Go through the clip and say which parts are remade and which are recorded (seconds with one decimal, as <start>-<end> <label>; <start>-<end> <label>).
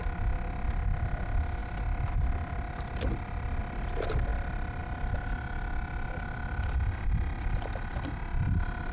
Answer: 0.0-8.9 recorded